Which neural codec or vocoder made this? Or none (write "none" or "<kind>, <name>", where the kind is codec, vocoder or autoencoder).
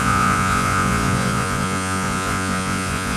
vocoder, Vocos